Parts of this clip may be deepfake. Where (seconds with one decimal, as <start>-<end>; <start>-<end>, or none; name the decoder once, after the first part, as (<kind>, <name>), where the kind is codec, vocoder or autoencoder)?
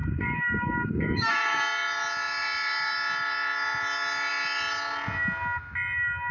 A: 0.0-1.6 (codec, DAC)